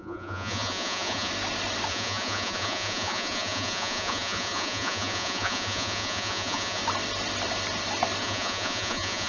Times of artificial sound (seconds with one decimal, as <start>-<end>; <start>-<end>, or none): 0.0-1.3; 1.9-6.8; 8.2-9.3